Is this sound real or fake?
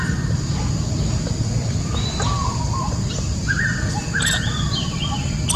real